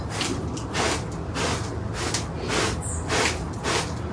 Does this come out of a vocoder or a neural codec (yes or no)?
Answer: no